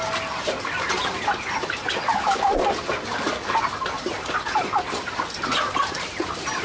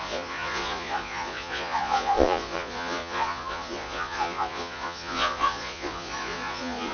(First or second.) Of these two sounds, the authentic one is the first